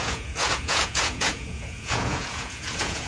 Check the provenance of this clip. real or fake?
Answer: fake